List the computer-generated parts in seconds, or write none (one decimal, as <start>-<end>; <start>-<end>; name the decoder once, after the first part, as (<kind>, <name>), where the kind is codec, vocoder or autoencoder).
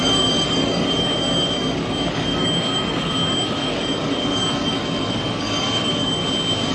0.0-6.2 (codec, DAC)